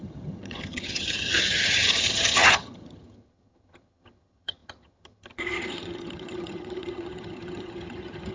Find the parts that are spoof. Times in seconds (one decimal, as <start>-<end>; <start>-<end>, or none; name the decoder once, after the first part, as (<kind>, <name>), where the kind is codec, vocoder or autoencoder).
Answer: 0.0-8.3 (vocoder, HiFi-GAN)

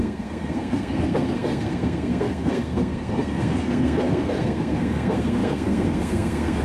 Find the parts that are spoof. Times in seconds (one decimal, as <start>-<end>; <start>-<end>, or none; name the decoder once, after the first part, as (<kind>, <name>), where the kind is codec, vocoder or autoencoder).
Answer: 0.0-6.6 (codec, SNAC)

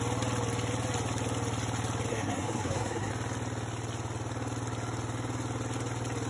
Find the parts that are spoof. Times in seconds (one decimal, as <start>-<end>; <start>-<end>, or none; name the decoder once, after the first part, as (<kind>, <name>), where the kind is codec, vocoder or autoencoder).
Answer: 2.1-3.1 (codec, SNAC)

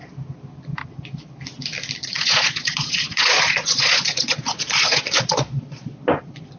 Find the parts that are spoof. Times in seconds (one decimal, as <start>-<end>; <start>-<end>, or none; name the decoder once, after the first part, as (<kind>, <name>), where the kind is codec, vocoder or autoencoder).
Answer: 2.0-6.0 (vocoder, Vocos)

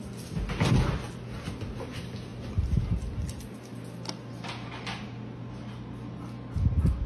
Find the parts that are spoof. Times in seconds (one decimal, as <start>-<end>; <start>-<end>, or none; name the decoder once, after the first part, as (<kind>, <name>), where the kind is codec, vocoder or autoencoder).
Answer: none

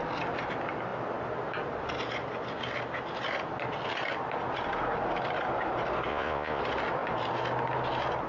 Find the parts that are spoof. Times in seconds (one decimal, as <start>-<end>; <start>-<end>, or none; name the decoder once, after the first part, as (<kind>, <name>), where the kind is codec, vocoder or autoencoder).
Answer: 6.1-6.6 (vocoder, Vocos)

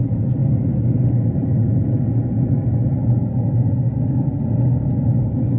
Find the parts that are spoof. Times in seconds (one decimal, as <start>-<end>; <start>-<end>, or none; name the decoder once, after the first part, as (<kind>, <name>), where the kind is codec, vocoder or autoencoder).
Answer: 3.9-4.4 (codec, DAC)

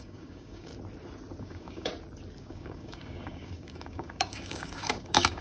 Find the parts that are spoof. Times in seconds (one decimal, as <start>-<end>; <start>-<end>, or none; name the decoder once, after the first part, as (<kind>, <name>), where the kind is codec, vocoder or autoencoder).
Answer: 0.0-0.7 (codec, DAC); 1.4-1.9; 2.4-5.4